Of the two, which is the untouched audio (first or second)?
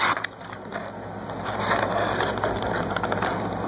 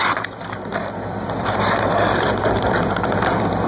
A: first